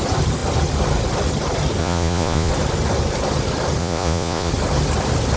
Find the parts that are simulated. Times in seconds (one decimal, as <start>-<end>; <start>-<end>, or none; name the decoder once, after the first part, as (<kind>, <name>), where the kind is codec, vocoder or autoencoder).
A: 1.8-2.5 (vocoder, Vocos); 3.8-4.5